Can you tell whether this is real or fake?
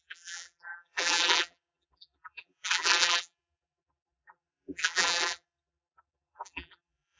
fake